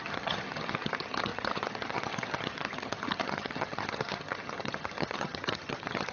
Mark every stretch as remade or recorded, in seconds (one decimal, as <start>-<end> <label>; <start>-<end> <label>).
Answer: 0.0-6.1 remade